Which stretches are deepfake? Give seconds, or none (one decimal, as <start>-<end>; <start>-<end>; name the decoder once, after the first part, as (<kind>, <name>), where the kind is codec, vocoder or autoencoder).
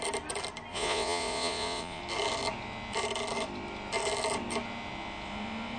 0.7-2.0 (vocoder, Vocos)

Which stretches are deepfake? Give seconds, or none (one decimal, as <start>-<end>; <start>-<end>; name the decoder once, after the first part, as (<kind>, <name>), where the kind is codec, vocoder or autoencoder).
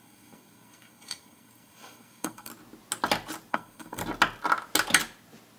0.0-2.5 (codec, SNAC); 3.5-4.0